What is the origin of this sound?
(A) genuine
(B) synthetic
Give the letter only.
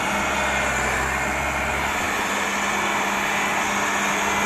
A